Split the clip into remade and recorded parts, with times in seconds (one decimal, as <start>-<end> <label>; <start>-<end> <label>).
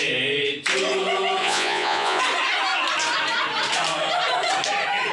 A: 0.0-1.4 recorded; 1.4-2.2 remade; 2.2-5.1 recorded